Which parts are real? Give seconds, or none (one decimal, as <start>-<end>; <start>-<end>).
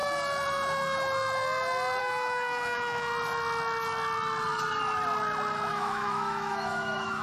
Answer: 0.0-2.0; 3.1-5.7